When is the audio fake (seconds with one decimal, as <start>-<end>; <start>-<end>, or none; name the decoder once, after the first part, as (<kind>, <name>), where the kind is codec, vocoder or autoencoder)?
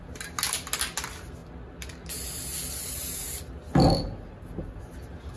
none